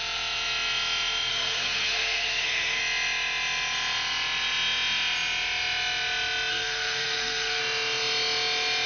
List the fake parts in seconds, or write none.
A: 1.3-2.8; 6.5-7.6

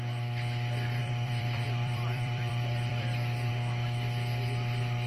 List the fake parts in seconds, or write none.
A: 1.0-3.5

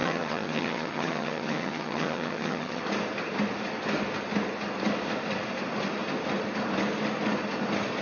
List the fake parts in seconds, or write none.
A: 0.0-2.8

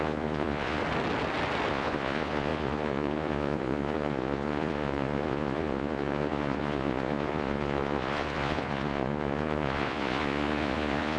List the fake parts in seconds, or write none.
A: 0.0-0.8; 1.7-11.2

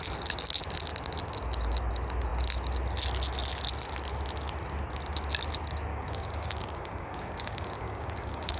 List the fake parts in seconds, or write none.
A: 5.9-8.6

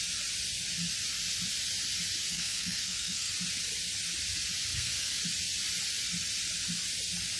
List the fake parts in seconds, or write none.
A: 2.3-3.3; 4.7-5.2

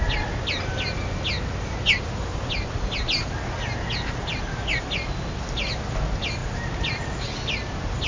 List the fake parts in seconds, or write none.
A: none